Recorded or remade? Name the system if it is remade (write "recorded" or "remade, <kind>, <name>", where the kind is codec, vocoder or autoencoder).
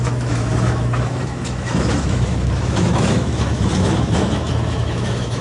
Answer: remade, autoencoder, DAC-VAE